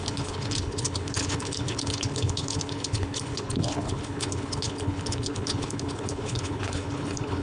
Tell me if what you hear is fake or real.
fake